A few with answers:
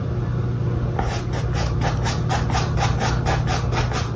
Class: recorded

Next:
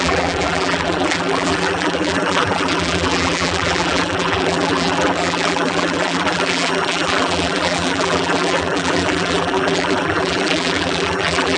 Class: remade